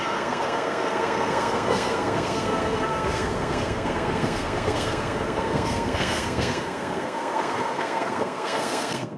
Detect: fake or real fake